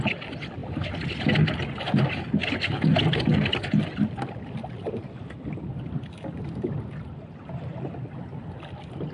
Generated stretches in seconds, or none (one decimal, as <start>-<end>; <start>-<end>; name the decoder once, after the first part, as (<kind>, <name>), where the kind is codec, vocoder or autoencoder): none